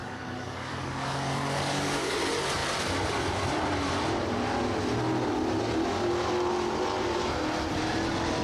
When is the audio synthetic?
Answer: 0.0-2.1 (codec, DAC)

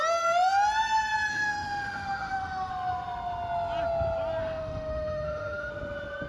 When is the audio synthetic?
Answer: 1.3-2.7 (autoencoder, DAC-VAE); 4.4-5.7

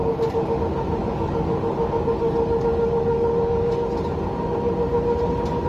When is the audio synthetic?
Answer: 0.0-0.6 (codec, DAC); 1.0-3.7

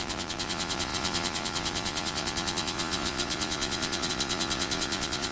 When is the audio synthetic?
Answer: 0.0-5.3 (vocoder, Vocos)

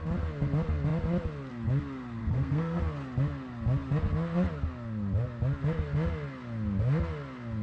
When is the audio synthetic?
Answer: 2.2-2.8 (codec, SNAC)

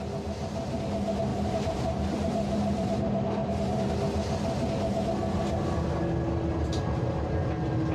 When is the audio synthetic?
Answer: 1.3-3.9 (vocoder, BigVGAN v2)